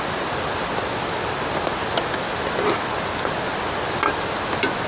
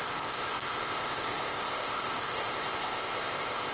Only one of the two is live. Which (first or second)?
first